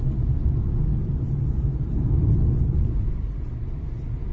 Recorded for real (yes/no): no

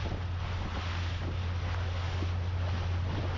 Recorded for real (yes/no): yes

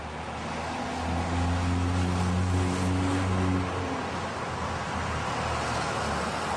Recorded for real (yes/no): yes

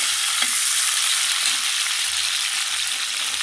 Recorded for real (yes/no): yes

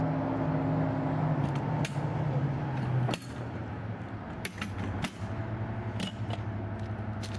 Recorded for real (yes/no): yes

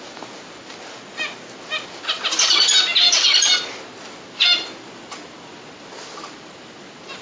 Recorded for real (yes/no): yes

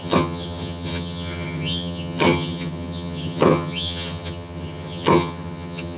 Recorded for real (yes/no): no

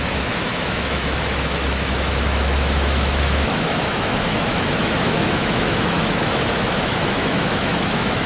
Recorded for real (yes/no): no